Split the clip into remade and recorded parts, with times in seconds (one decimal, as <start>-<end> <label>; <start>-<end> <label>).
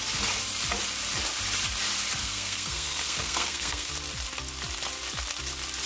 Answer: 0.0-2.2 recorded; 2.2-3.9 remade; 3.9-5.9 recorded